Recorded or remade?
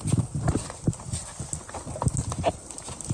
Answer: recorded